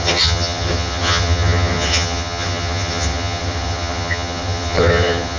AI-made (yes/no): yes